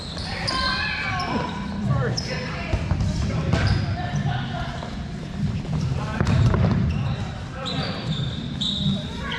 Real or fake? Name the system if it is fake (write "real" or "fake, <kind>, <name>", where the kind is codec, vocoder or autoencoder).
fake, vocoder, BigVGAN v2